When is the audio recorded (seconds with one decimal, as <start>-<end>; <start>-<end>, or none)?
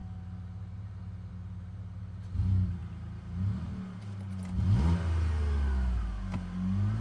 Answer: 0.0-7.0